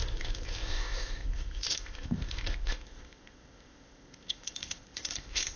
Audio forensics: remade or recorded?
remade